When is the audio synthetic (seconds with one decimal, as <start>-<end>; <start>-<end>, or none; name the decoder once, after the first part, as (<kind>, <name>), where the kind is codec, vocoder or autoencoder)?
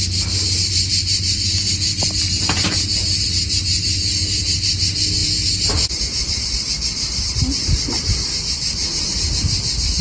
none